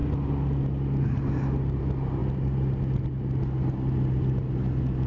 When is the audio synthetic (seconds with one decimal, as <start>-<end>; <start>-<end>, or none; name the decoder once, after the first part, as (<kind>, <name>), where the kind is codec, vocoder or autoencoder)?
none